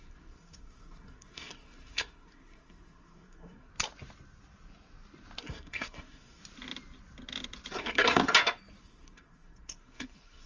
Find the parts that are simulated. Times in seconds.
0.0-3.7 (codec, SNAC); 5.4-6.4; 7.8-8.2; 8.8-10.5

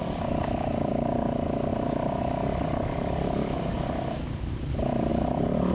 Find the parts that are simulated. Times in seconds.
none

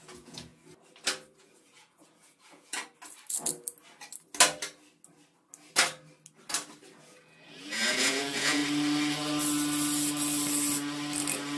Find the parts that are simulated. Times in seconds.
0.0-0.5 (vocoder, Vocos); 1.4-2.8; 7.0-8.6

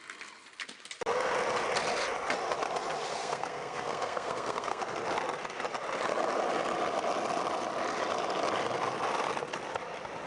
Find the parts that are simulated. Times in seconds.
3.1-4.8 (codec, SNAC)

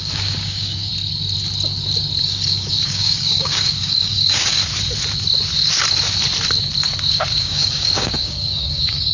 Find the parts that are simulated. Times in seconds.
0.0-0.9 (codec, DAC); 2.2-4.6; 7.4-9.1

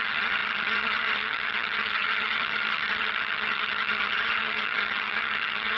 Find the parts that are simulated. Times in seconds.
0.0-5.8 (vocoder, HiFi-GAN)